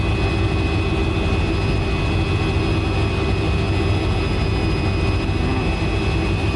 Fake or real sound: real